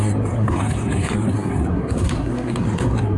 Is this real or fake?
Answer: fake